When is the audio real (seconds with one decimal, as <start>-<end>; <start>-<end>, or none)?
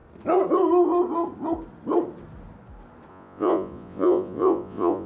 0.0-3.1